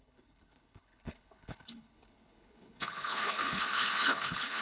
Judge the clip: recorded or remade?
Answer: remade